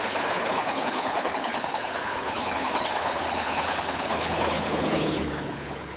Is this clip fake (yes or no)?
yes